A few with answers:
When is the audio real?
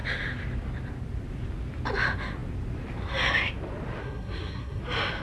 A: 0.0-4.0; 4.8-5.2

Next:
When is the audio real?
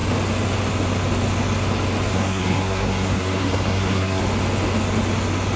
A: 0.0-2.1; 4.2-5.6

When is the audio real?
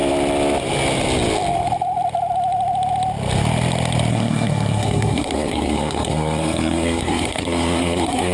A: 0.0-4.1